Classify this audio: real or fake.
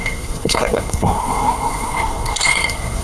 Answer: fake